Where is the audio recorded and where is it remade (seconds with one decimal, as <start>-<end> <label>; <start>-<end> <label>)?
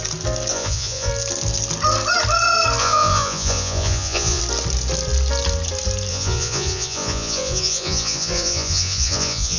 0.0-0.5 recorded; 0.5-1.1 remade; 1.1-2.8 recorded; 2.8-4.4 remade; 4.4-6.1 recorded; 6.1-9.6 remade